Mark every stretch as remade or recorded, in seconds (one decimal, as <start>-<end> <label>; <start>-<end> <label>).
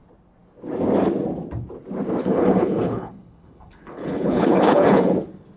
0.0-2.2 recorded; 2.2-5.1 remade; 5.1-5.6 recorded